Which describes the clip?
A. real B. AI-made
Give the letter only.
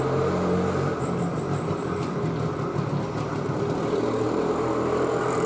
A